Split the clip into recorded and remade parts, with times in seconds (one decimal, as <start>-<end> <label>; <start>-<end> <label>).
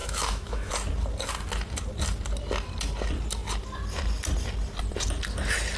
0.0-0.7 remade; 0.7-5.8 recorded